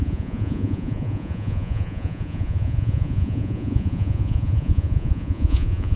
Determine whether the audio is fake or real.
fake